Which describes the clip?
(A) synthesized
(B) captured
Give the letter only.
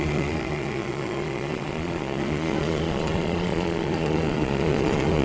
A